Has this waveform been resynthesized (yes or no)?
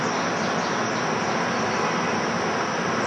no